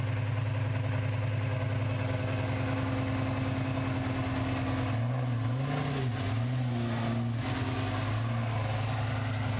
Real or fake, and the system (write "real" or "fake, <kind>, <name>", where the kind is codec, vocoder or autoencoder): real